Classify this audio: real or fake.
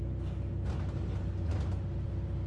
real